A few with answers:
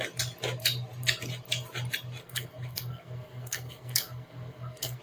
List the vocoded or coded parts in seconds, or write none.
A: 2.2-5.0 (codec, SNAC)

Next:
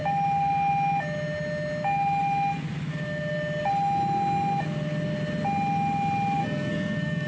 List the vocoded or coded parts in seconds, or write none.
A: 6.4-7.3 (codec, SNAC)

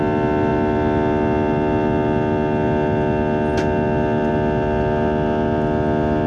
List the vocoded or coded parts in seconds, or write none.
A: none

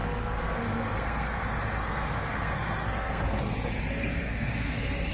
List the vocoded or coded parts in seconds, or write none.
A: 0.0-1.4 (codec, SNAC); 1.8-3.4; 4.2-5.1

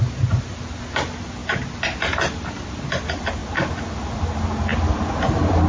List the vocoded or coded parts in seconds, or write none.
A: none

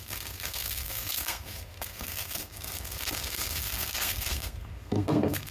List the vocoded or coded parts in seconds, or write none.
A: 0.0-5.5 (codec, SNAC)

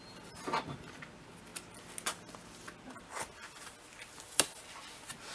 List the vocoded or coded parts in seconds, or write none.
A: none